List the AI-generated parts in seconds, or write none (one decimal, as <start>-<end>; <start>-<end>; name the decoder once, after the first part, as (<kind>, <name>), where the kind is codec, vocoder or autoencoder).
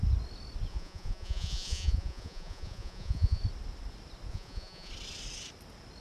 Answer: 0.7-3.4 (vocoder, Vocos); 4.3-4.9